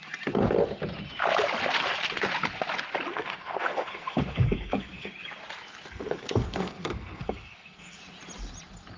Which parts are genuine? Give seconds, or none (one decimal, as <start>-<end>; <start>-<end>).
0.0-3.1; 5.1-5.9; 8.0-9.0